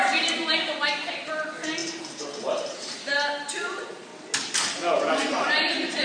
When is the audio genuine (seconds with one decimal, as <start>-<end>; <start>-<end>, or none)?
4.1-5.1